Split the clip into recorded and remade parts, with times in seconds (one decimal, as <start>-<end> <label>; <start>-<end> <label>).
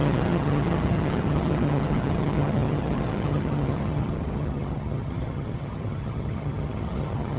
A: 0.0-7.4 remade